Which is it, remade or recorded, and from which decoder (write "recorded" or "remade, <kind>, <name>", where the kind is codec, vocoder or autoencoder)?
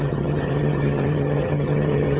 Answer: remade, vocoder, HiFi-GAN